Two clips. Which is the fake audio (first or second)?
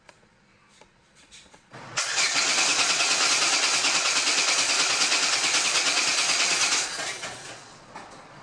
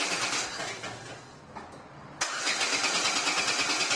first